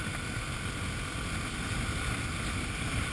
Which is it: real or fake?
real